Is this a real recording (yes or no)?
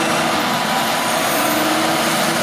yes